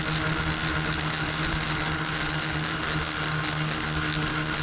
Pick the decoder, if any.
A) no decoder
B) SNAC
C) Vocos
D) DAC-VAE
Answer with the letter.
A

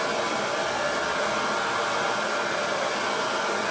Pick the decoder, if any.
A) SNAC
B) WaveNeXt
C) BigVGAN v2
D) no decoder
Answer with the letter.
D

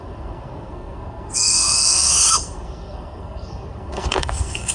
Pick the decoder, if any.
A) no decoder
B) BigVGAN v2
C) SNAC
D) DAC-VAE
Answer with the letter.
C